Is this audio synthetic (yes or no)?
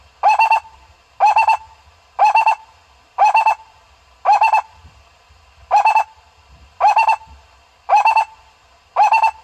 no